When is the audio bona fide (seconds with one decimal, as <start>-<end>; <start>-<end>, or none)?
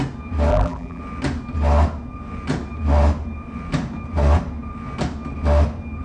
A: 0.0-0.5; 1.0-6.0